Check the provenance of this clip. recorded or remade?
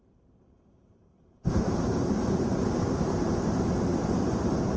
remade